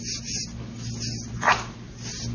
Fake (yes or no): no